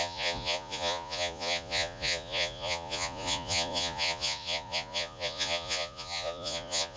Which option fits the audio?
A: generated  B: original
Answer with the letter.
A